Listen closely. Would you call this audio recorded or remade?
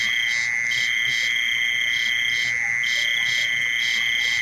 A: recorded